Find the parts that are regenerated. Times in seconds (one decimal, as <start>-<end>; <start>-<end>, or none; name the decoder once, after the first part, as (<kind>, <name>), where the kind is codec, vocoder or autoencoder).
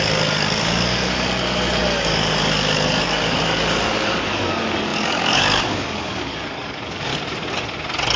0.0-7.1 (codec, DAC)